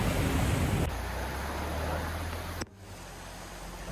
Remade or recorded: recorded